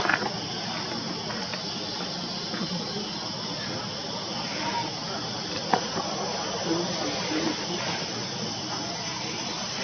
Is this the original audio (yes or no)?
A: yes